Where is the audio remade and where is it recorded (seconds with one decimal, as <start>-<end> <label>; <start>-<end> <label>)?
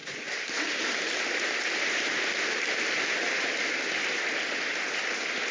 0.0-5.5 recorded